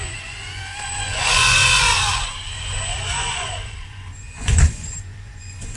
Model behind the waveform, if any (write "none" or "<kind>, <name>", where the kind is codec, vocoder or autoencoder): vocoder, Vocos